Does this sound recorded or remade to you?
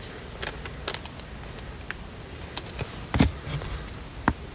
recorded